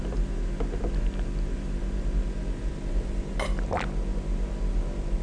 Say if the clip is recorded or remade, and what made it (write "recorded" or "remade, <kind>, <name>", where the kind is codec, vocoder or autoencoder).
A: recorded